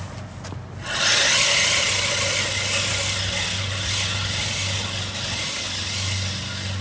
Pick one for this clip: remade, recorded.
recorded